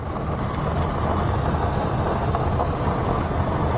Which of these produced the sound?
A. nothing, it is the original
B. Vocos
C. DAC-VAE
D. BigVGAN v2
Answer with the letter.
A